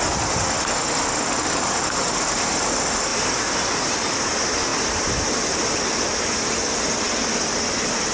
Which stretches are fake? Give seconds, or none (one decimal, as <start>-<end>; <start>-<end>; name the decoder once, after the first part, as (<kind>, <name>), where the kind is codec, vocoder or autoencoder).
none